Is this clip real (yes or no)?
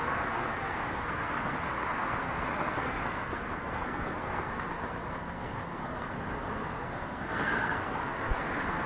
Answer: no